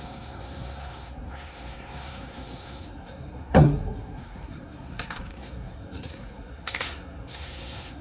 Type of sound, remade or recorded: remade